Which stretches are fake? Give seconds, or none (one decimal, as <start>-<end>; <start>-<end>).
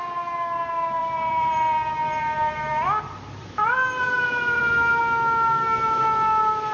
1.0-5.0